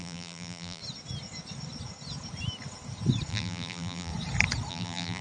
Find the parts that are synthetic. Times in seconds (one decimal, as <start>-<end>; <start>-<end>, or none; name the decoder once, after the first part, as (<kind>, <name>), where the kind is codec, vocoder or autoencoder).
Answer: 0.0-0.8 (vocoder, BigVGAN v2); 3.3-4.1; 4.7-5.2